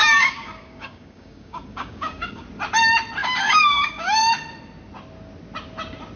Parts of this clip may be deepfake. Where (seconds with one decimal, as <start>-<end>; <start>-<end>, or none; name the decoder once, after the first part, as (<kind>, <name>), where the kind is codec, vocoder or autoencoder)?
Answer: 0.0-2.4 (codec, DAC); 3.2-4.2